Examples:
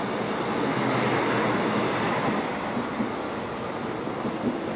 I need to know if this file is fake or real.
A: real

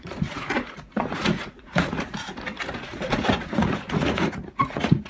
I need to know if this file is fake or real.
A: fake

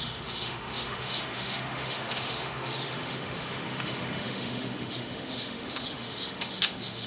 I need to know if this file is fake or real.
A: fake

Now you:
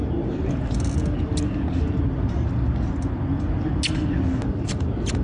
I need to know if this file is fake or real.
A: real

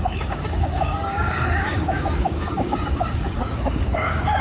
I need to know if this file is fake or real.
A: fake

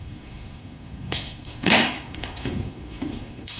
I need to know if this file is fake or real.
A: fake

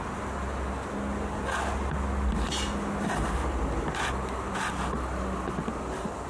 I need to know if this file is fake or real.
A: real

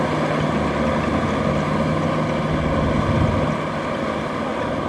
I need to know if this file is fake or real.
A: real